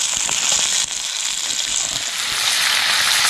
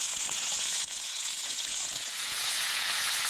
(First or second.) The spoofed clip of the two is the second